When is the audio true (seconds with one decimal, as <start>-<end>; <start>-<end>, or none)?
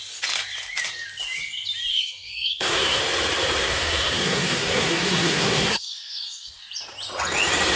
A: 0.0-1.9; 3.0-3.6; 6.6-7.8